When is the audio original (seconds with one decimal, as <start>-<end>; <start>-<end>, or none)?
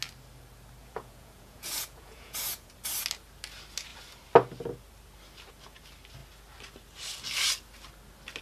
0.0-0.8; 2.7-8.4